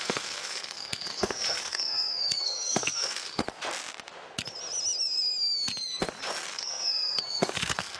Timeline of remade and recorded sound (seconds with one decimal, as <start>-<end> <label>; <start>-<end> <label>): 0.0-3.4 remade; 3.4-6.5 recorded; 6.5-8.0 remade